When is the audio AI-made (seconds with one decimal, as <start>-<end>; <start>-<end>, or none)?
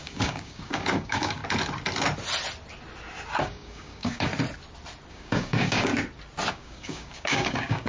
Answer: 0.0-1.4; 3.4-4.3; 5.1-5.9; 6.5-7.9